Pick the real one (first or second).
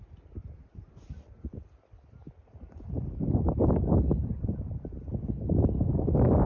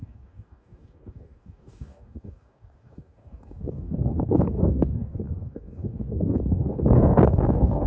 first